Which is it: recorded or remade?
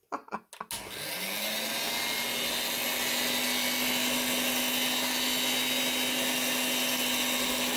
recorded